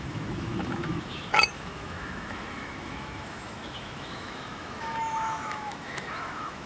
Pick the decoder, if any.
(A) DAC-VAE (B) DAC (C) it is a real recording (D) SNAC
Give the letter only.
A